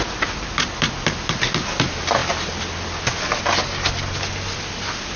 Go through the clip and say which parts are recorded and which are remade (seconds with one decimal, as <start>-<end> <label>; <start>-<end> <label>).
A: 0.0-5.2 recorded